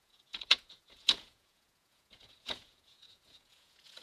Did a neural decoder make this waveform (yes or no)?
yes